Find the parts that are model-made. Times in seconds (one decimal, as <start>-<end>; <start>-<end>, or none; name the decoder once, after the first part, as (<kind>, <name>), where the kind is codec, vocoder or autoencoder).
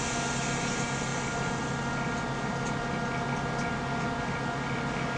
none